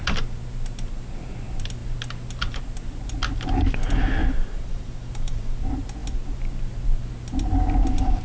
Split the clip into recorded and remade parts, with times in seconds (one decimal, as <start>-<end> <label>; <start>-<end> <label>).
0.0-4.2 recorded; 4.2-5.6 remade; 5.6-8.2 recorded